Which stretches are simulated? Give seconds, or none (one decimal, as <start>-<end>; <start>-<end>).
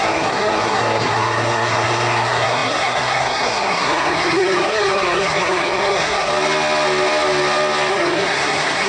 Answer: 0.0-6.3; 7.9-8.9